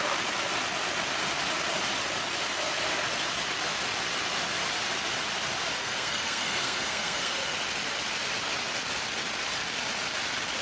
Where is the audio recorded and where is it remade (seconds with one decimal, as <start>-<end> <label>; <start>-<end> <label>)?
0.0-5.8 recorded; 5.8-7.3 remade; 7.3-10.6 recorded